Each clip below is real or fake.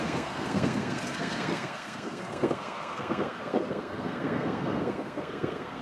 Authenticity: fake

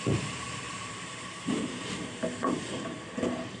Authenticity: fake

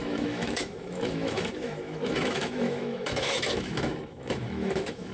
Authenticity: fake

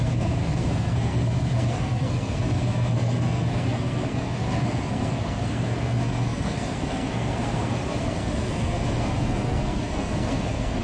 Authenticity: fake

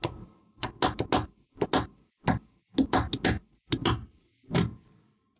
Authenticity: real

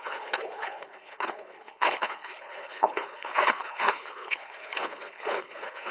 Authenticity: fake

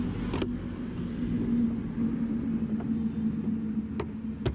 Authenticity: real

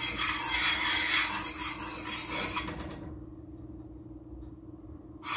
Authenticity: real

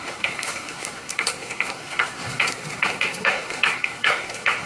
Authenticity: fake